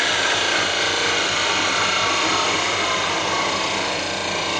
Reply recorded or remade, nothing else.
recorded